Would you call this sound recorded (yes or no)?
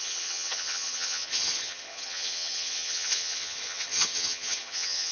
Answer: no